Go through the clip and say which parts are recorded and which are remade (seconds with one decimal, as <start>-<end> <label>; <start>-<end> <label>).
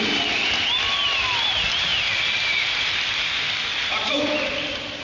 0.0-5.0 remade